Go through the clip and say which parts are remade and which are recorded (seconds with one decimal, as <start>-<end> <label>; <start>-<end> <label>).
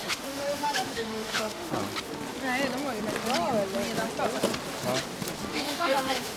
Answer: 0.0-1.7 remade; 1.7-5.5 recorded; 5.5-6.4 remade